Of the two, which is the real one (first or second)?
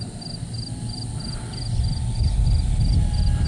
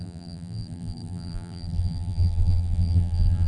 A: first